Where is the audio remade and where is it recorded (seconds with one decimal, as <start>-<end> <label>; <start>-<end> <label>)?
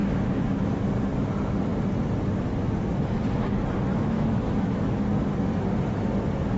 0.0-0.7 remade; 0.7-3.9 recorded; 3.9-4.9 remade; 4.9-6.6 recorded